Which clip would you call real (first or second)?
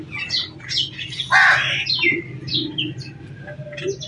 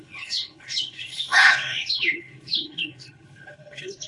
first